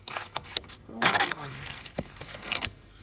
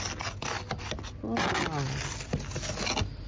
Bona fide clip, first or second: second